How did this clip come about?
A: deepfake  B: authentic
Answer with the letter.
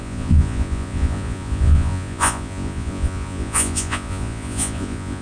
A